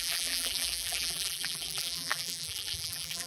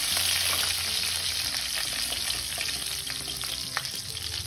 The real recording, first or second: second